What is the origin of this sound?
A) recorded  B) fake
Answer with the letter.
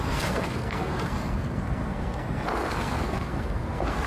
B